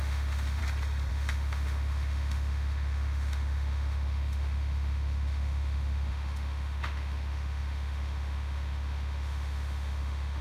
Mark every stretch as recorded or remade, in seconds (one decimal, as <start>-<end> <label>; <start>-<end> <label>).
0.0-0.6 remade; 0.6-1.1 recorded; 1.1-10.4 remade

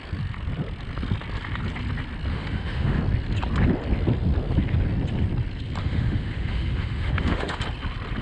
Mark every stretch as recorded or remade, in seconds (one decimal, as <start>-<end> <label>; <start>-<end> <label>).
0.0-2.3 recorded; 2.3-3.0 remade; 3.0-5.8 recorded; 5.8-7.6 remade; 7.6-8.2 recorded

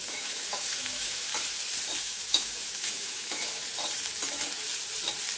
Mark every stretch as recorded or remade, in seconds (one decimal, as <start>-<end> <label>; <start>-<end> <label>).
0.0-1.3 remade; 1.3-2.0 recorded; 2.0-3.6 remade; 3.6-5.4 recorded

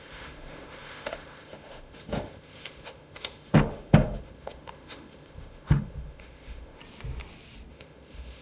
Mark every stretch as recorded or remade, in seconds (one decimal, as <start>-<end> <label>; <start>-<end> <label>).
0.0-6.8 remade; 6.8-7.7 recorded; 7.7-8.4 remade

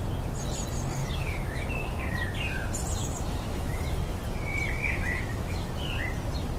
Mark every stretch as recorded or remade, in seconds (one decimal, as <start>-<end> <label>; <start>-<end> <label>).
0.0-1.0 recorded; 1.0-2.0 remade; 2.0-3.0 recorded; 3.0-3.9 remade; 3.9-4.8 recorded; 4.8-5.7 remade; 5.7-6.6 recorded

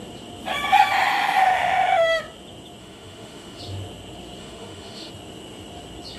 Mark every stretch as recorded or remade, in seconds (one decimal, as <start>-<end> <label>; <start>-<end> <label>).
0.0-1.1 recorded; 1.1-2.2 remade; 2.2-2.8 recorded; 2.8-3.6 remade; 3.6-4.4 recorded; 4.4-5.1 remade; 5.1-6.2 recorded